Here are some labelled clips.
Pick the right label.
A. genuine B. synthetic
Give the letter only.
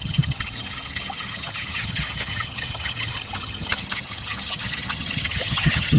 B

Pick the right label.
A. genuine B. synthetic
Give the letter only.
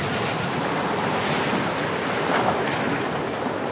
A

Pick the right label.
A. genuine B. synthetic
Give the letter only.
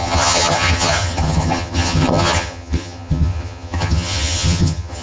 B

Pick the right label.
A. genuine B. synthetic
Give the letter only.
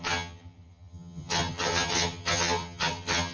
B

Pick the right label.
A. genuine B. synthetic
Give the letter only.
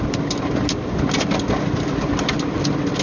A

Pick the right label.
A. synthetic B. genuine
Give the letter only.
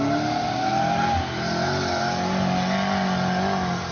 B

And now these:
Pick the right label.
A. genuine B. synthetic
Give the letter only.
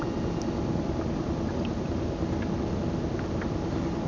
A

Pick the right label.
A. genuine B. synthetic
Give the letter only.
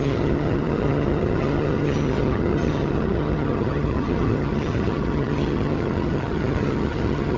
B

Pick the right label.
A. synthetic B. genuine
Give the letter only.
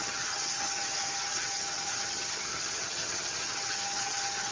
A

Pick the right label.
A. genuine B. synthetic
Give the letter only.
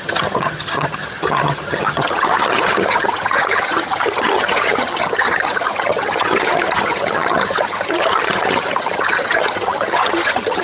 B